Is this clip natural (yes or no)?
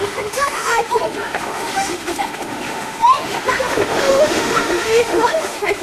no